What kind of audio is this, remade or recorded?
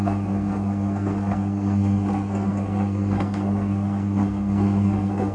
remade